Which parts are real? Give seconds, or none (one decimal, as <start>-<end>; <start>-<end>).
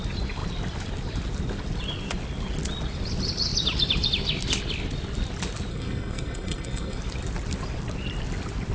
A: 0.0-5.7; 7.0-8.7